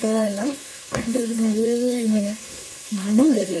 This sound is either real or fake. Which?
fake